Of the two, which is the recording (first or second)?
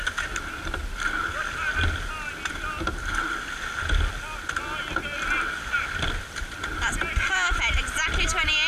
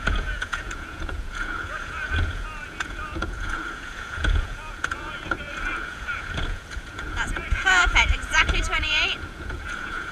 first